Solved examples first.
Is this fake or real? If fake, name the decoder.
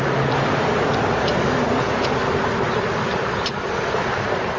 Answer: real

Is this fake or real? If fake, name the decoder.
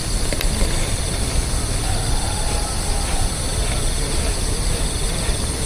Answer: real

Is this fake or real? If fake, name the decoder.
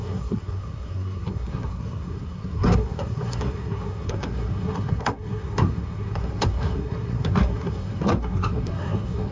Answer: fake, codec, SNAC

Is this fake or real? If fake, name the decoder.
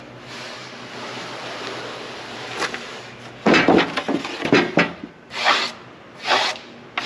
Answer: real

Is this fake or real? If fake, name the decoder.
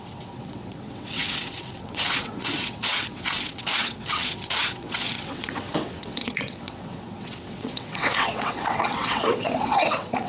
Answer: fake, vocoder, WaveNeXt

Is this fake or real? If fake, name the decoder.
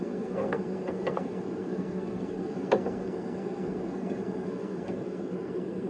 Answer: fake, codec, SNAC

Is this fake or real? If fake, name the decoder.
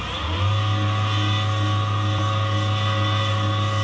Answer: real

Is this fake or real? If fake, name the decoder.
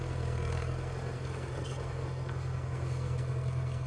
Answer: fake, codec, SNAC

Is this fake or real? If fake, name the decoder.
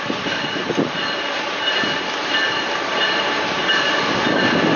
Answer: fake, vocoder, BigVGAN v2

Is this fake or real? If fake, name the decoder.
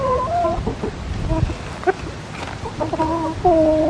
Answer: real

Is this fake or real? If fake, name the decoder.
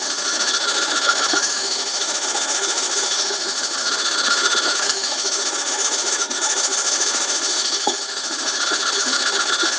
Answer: fake, autoencoder, DAC-VAE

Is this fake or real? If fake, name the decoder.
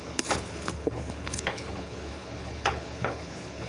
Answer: fake, codec, HILCodec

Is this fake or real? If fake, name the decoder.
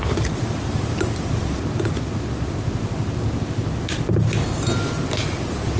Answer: real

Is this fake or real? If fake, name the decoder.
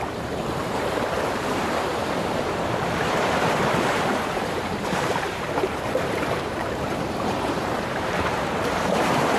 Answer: fake, vocoder, BigVGAN v2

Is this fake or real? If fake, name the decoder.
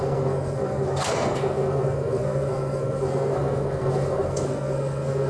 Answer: fake, codec, SNAC